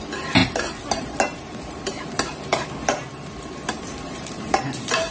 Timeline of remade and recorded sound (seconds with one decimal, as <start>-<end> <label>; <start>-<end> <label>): 0.0-0.4 remade; 0.4-1.0 recorded; 1.0-5.1 remade